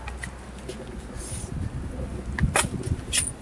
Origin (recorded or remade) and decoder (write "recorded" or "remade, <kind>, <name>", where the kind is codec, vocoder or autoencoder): recorded